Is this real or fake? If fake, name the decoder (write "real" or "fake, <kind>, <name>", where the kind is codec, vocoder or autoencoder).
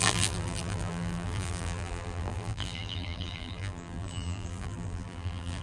fake, vocoder, BigVGAN v2